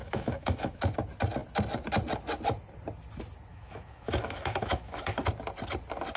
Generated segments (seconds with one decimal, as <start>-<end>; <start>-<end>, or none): 0.0-0.8; 3.5-5.2